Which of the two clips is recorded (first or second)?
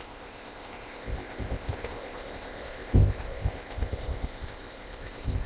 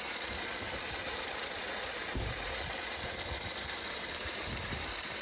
second